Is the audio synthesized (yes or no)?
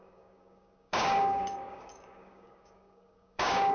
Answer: yes